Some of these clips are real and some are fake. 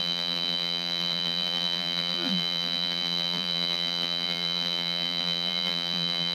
fake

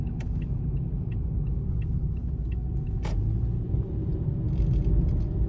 real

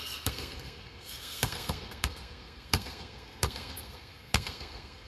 fake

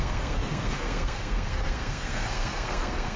fake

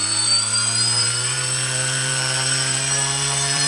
fake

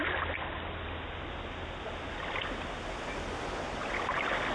real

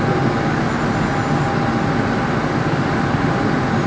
real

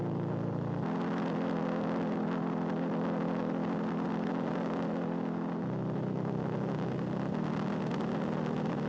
real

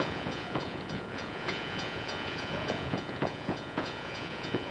fake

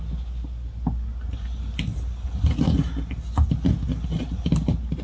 real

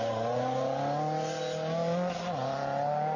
real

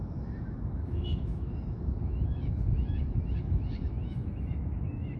fake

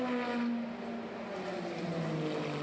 real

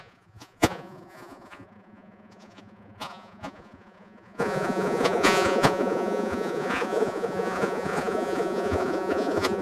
fake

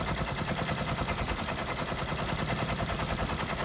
real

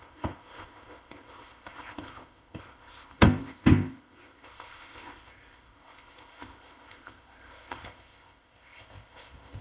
fake